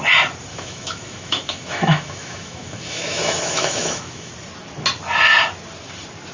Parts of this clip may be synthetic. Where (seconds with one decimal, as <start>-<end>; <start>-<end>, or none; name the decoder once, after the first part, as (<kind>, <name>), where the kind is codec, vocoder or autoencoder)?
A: 0.5-4.3 (autoencoder, DAC-VAE)